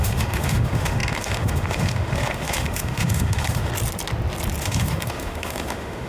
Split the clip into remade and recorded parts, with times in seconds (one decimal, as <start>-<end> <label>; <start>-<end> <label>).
0.0-3.7 remade; 3.7-4.6 recorded; 4.6-6.1 remade